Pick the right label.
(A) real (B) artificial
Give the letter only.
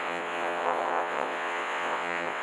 B